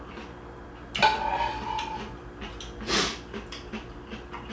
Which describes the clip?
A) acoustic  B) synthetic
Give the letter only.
A